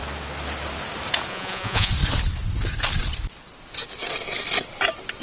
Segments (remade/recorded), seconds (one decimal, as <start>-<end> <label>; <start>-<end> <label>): 0.0-1.3 recorded; 1.3-1.9 remade; 1.9-5.2 recorded